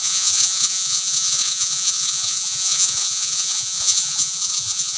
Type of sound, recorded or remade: remade